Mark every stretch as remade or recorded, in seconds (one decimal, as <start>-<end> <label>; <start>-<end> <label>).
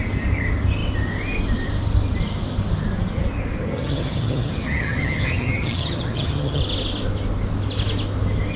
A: 0.0-3.6 recorded; 3.6-6.6 remade; 6.6-8.6 recorded